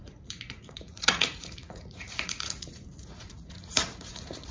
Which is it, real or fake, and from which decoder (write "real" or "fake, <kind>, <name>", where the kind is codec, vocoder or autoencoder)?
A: fake, vocoder, Vocos